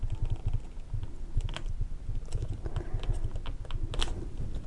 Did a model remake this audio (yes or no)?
no